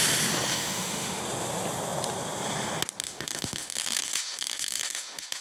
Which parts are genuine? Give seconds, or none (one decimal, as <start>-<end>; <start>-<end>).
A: 0.0-0.5; 1.2-3.0